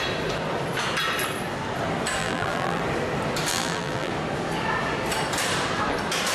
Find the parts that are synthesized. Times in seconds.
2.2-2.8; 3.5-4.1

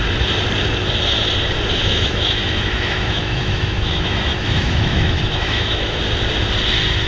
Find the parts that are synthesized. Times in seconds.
1.8-6.0

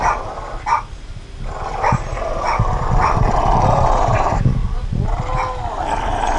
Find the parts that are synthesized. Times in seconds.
none